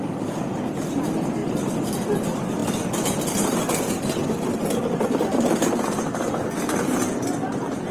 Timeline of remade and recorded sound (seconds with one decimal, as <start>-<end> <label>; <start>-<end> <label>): 0.0-7.9 recorded